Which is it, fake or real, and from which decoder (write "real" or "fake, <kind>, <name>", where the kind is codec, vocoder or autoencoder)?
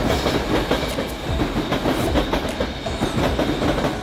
real